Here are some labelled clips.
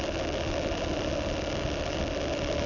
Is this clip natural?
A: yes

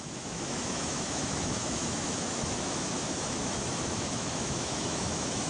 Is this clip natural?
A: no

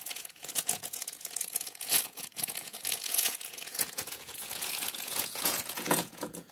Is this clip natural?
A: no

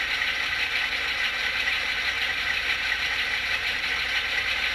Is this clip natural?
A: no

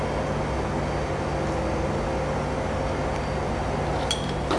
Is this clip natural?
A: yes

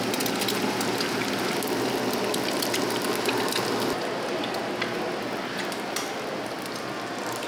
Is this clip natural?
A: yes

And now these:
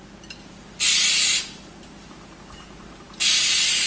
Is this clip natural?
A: yes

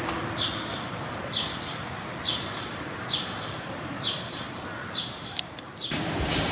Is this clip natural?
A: no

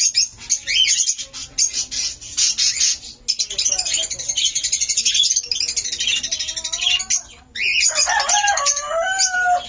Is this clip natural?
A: yes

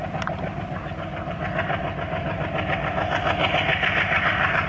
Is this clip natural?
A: yes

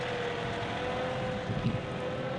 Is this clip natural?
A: yes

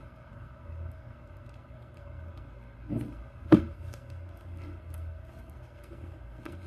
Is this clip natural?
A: no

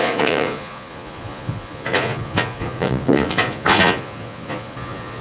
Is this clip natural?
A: no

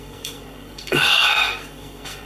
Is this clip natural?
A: no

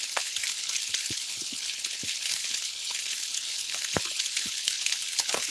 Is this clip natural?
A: no